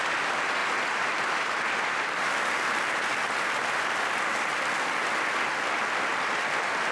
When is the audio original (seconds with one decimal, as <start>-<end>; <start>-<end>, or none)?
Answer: 0.0-6.9